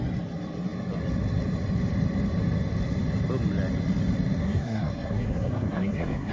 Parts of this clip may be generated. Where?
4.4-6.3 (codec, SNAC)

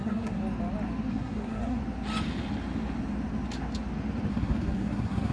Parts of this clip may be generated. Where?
0.0-0.4 (codec, SNAC); 1.1-1.8; 4.3-5.3

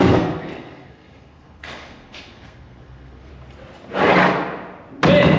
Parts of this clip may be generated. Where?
0.0-3.3 (codec, SNAC)

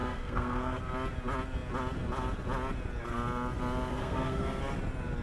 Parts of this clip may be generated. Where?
0.0-0.8 (codec, SNAC); 3.9-4.6

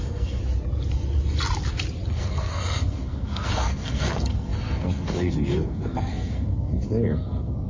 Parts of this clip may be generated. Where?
0.0-0.4 (codec, SNAC); 2.1-7.7

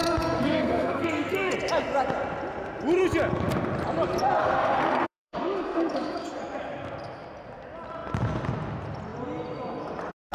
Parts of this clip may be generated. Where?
0.0-1.5 (codec, SNAC); 4.4-6.4